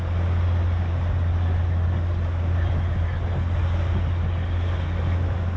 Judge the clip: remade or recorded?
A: recorded